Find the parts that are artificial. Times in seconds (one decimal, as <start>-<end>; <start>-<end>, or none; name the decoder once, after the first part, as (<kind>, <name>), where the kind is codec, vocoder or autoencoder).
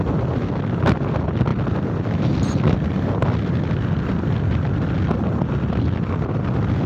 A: none